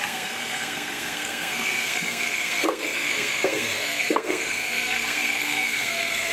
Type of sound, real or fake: fake